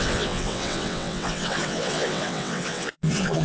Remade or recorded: remade